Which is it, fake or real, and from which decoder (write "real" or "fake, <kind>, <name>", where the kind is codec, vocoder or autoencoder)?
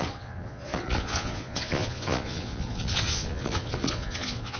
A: fake, vocoder, Vocos